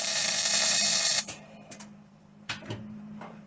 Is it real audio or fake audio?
fake